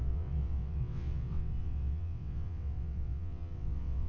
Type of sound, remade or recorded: remade